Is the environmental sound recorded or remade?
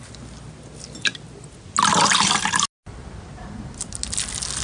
recorded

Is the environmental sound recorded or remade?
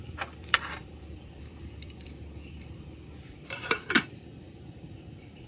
remade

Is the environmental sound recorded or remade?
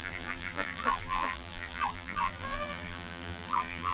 remade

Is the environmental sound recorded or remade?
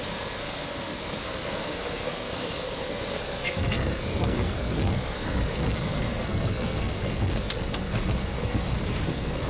remade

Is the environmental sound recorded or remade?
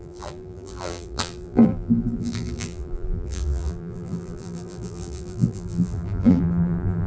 remade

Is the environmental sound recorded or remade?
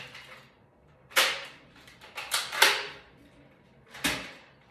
remade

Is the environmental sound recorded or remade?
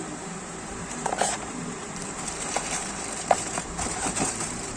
remade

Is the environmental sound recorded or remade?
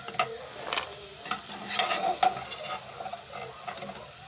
recorded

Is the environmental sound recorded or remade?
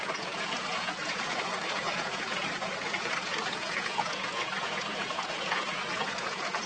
remade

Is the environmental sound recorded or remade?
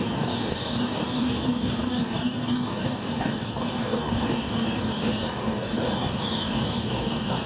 remade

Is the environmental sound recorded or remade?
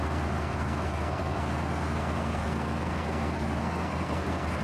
remade